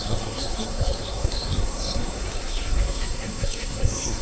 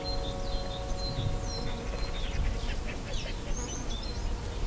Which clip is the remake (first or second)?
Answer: first